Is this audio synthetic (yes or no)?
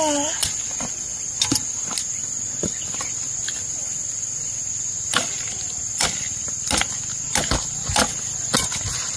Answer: no